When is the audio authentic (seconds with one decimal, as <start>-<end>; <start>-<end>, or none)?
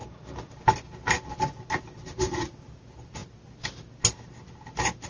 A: 0.0-5.1